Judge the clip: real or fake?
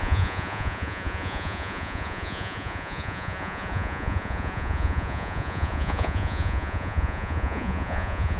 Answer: fake